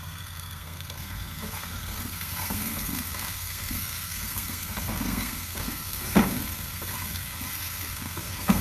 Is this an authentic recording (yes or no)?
no